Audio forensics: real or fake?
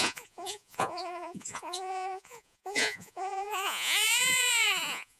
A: fake